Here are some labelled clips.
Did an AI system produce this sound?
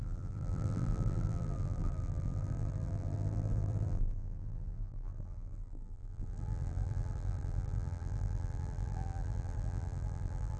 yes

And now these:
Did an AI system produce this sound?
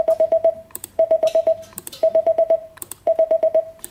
yes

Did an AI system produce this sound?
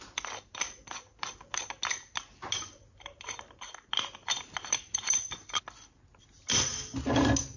no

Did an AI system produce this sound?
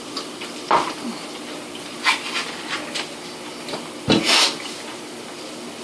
yes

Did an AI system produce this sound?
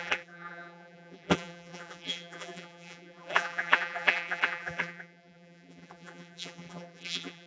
yes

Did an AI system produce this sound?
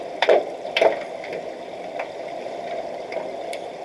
yes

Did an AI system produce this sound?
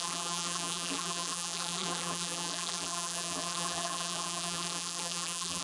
yes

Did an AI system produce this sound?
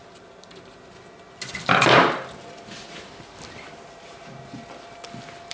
no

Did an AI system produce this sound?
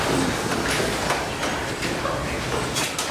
yes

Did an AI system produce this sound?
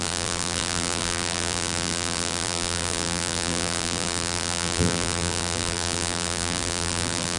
yes